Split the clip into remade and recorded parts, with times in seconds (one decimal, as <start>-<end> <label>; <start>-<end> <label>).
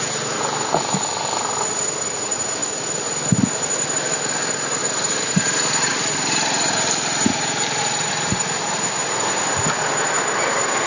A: 0.0-10.9 recorded